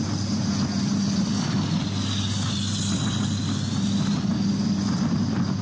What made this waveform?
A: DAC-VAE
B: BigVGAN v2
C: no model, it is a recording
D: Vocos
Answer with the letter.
C